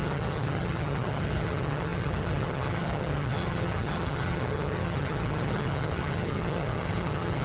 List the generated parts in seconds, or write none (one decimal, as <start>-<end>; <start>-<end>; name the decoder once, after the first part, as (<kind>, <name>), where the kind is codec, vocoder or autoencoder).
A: 0.0-7.4 (vocoder, HiFi-GAN)